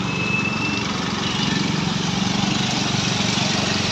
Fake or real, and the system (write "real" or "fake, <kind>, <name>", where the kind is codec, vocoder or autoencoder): fake, vocoder, BigVGAN v2